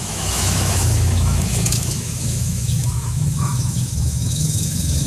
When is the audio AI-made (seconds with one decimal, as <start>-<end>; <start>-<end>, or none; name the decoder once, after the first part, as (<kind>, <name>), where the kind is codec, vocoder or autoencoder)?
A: 0.0-5.1 (autoencoder, DAC-VAE)